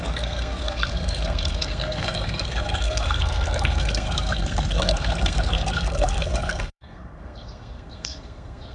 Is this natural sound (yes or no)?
no